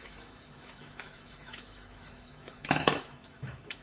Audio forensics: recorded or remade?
remade